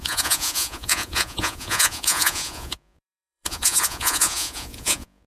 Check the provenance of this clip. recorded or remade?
remade